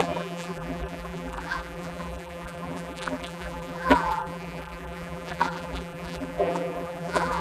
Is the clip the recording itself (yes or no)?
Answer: no